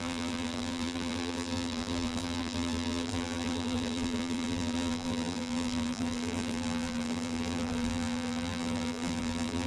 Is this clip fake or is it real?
fake